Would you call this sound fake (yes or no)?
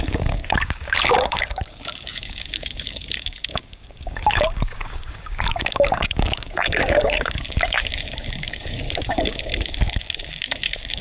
yes